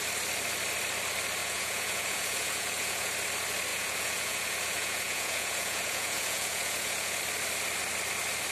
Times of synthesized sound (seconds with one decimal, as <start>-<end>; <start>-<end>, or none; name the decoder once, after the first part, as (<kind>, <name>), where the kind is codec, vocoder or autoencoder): 1.4-3.1 (vocoder, Vocos); 3.7-7.2